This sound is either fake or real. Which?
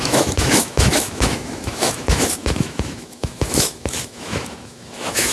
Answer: fake